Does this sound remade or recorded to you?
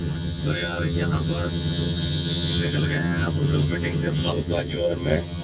remade